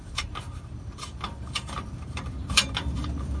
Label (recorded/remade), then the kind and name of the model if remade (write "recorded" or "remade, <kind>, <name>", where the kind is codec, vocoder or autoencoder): remade, vocoder, BigVGAN v2